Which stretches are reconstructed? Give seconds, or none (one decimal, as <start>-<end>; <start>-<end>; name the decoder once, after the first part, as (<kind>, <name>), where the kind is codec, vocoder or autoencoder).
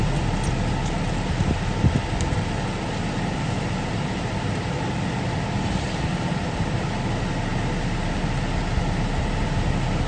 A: none